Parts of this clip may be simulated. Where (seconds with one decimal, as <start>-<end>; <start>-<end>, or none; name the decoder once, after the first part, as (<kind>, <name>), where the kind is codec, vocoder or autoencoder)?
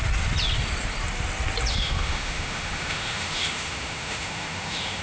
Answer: 1.7-5.0 (autoencoder, DAC-VAE)